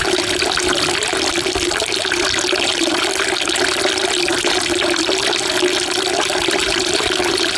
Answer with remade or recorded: recorded